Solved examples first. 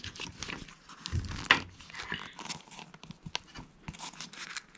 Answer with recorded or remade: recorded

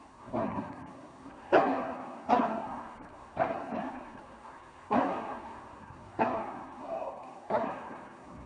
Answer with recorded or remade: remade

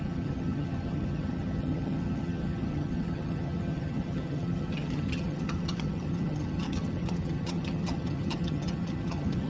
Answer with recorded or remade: remade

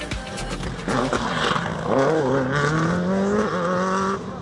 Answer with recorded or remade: recorded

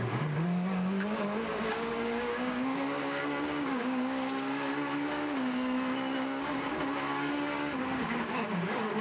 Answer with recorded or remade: remade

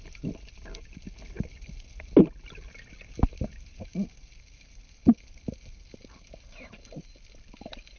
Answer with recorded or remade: recorded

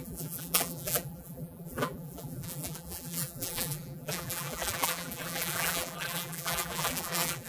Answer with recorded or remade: remade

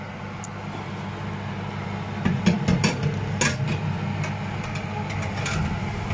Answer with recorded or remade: recorded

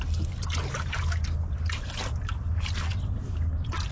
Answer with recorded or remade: recorded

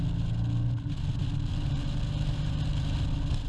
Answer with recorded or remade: recorded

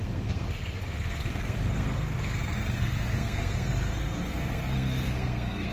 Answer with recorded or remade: remade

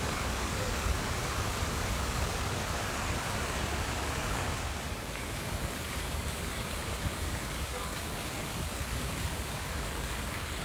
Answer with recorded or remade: remade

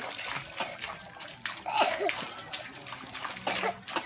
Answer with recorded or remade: recorded